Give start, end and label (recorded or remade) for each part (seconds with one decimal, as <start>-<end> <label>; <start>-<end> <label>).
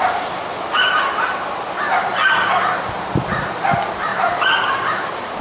0.0-4.1 recorded; 4.1-5.4 remade